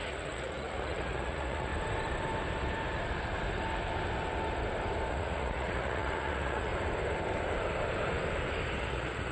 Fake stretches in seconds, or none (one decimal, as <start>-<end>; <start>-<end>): 0.0-1.7; 5.1-6.7; 8.8-9.3

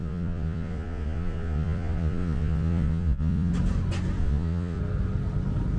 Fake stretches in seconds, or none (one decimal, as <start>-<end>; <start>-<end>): 0.0-3.5; 4.2-4.8

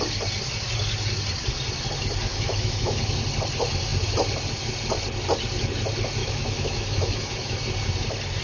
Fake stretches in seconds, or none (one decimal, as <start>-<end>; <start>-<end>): 2.3-3.2; 6.2-7.6

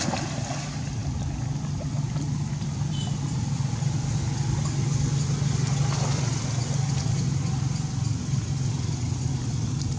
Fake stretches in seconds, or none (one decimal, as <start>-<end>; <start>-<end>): none

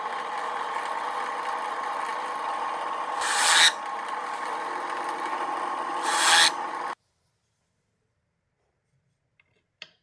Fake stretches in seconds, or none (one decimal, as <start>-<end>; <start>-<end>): none